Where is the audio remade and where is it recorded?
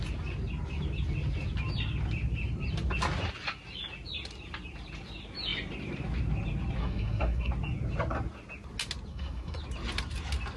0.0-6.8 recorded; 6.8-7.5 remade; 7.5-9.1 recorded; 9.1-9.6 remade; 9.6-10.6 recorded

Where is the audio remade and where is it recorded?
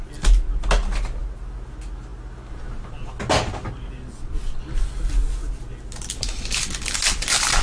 0.0-7.6 recorded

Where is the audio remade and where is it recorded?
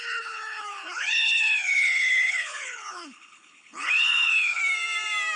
0.0-4.6 remade; 4.6-5.4 recorded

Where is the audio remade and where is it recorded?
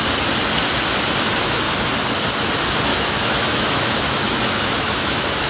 0.0-2.9 recorded; 2.9-5.5 remade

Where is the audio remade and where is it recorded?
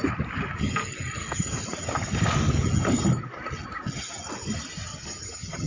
0.0-4.9 recorded; 4.9-5.7 remade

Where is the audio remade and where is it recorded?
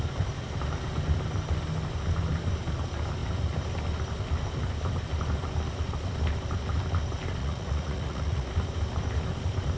0.0-7.4 recorded; 7.4-8.5 remade; 8.5-9.8 recorded